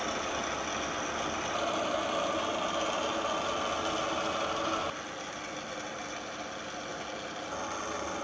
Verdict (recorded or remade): recorded